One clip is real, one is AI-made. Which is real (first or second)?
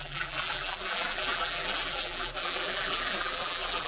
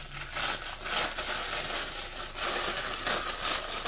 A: second